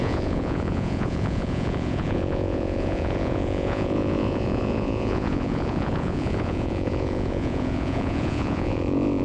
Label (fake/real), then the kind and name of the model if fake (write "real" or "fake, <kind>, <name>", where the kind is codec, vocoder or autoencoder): fake, vocoder, Vocos